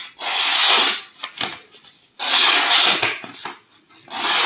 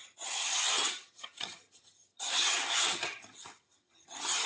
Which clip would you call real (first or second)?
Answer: first